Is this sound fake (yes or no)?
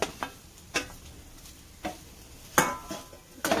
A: no